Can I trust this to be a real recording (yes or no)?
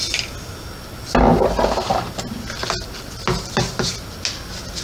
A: yes